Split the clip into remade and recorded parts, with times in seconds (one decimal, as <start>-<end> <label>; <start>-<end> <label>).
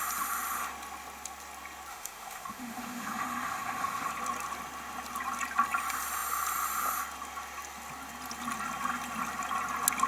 0.0-1.9 recorded; 1.9-4.1 remade; 4.1-10.1 recorded